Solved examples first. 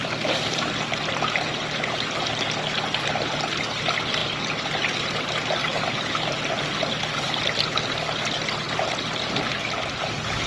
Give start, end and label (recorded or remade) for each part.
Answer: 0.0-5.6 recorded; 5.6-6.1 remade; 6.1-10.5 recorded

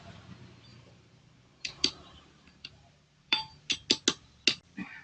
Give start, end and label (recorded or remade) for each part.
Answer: 0.0-0.7 recorded; 0.7-3.7 remade; 3.7-5.0 recorded